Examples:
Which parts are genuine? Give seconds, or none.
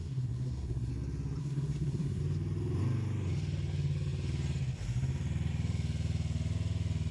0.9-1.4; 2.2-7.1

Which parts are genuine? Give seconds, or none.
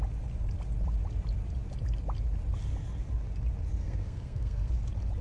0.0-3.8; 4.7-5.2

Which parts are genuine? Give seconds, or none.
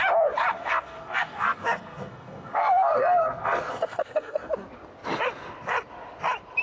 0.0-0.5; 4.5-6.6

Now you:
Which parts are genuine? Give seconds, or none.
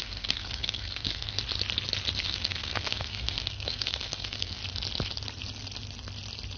1.4-2.2; 4.6-6.6